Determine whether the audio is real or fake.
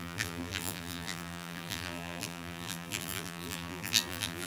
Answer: fake